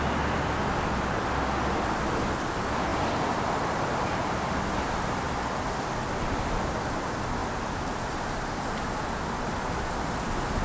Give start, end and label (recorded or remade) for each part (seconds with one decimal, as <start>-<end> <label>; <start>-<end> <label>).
0.0-10.6 recorded